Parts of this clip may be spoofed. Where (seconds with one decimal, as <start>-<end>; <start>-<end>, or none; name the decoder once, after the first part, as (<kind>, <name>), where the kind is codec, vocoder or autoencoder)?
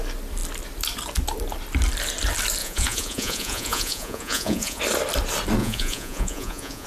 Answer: 2.6-4.8 (vocoder, Vocos); 5.6-6.9